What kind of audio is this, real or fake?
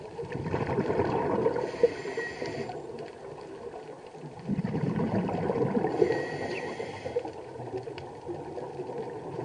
fake